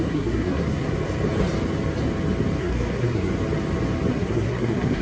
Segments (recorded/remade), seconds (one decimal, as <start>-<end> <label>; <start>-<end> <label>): 0.0-0.9 remade; 0.9-2.6 recorded; 2.6-3.3 remade; 3.3-4.1 recorded; 4.1-5.0 remade